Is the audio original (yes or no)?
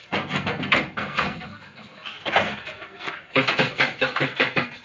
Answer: no